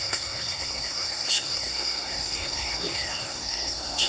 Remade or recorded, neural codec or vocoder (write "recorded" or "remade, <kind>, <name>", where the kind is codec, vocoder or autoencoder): remade, codec, SNAC